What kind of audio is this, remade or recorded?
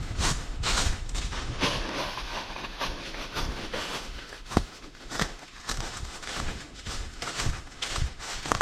remade